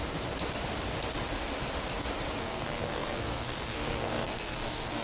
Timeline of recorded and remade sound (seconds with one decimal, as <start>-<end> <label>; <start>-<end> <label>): 0.0-2.4 recorded; 2.4-5.0 remade